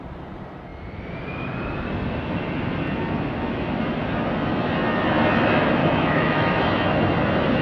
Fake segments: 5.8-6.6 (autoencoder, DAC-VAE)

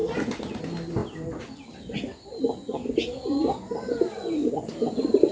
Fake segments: none

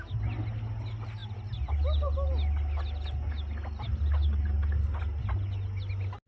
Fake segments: none